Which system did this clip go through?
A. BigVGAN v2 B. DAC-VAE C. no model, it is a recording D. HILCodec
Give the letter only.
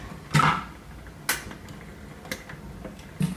C